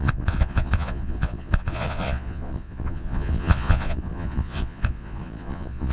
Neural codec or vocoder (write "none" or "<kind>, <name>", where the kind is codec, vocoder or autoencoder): vocoder, Vocos